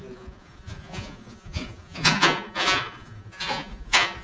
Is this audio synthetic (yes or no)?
yes